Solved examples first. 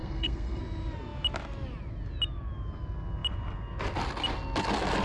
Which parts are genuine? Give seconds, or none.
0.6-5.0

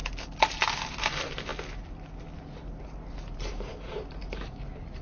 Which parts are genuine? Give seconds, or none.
0.0-0.9; 1.5-2.8

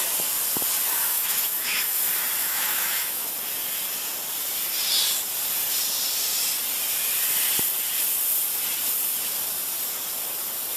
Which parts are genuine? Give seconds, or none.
0.0-1.1; 2.0-2.4; 3.3-10.8

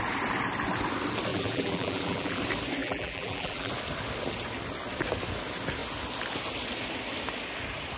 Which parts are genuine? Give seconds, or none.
0.0-1.3; 2.4-2.8; 3.7-8.0

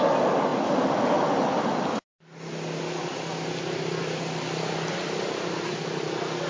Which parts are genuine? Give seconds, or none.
0.0-6.5

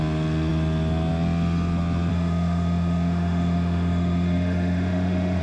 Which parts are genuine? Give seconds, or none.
0.0-2.1